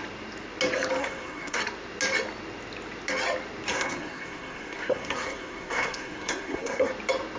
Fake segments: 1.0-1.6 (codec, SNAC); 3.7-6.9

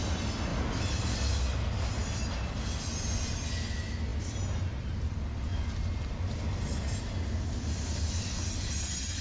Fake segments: 5.5-7.1 (vocoder, BigVGAN v2)

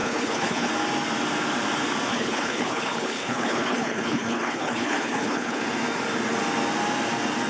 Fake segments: 0.0-0.7 (codec, HILCodec); 2.1-5.6